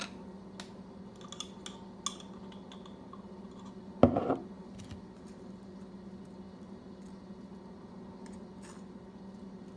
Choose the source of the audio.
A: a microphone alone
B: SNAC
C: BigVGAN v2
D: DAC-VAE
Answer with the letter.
A